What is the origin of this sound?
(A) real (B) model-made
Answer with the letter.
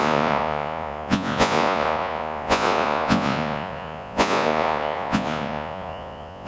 B